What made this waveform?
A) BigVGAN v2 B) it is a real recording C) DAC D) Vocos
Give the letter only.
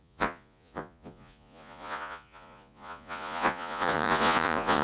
D